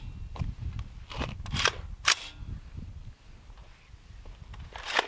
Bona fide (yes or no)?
yes